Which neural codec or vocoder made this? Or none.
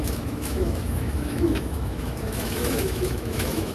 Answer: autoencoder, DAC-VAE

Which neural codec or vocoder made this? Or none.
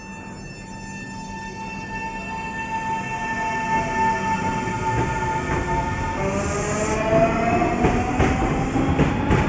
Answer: none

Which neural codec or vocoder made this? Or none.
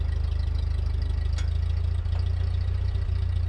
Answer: none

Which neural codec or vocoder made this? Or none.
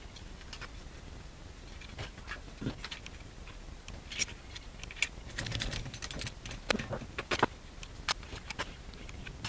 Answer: none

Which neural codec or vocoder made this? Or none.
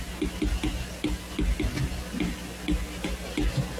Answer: none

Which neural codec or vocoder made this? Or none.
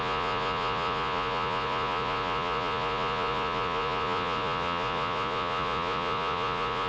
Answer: vocoder, Vocos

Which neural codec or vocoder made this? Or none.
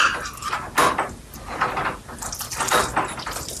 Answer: none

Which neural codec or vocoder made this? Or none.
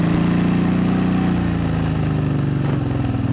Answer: none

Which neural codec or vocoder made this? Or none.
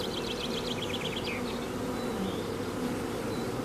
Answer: none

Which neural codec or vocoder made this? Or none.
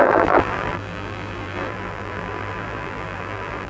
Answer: vocoder, BigVGAN v2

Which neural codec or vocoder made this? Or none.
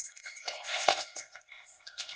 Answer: codec, ZipCodec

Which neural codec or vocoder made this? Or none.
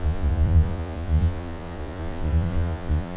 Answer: vocoder, Vocos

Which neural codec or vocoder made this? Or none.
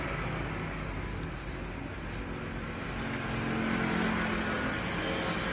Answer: none